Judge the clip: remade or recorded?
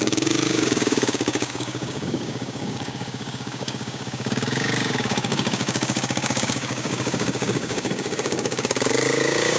remade